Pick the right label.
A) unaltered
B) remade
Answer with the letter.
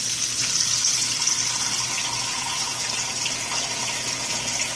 A